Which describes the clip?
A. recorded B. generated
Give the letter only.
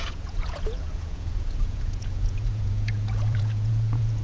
B